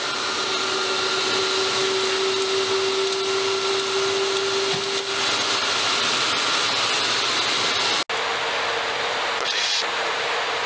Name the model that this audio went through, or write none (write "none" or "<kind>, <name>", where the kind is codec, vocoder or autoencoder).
none